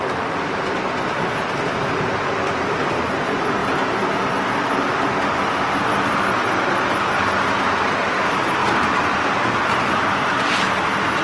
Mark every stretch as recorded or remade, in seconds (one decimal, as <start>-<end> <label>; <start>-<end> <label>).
0.0-11.2 recorded